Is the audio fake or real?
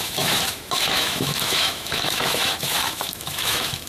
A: fake